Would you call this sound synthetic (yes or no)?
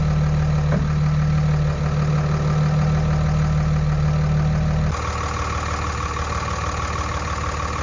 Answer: no